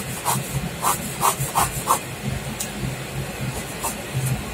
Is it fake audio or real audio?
real